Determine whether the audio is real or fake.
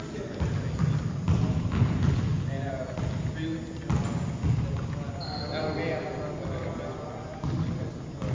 real